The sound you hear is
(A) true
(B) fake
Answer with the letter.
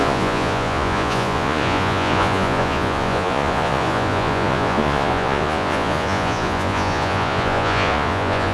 B